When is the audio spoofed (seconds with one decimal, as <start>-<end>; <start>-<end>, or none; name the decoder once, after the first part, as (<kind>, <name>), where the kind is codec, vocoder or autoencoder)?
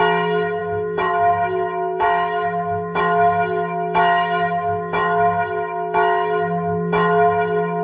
0.0-7.8 (autoencoder, DAC-VAE)